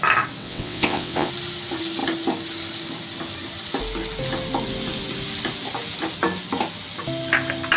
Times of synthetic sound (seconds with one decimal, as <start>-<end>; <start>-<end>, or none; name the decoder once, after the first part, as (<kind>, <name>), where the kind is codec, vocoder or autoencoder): 0.4-1.3 (vocoder, WaveNeXt)